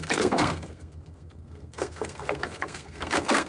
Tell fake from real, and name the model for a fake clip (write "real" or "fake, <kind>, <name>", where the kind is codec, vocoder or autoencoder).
fake, codec, SNAC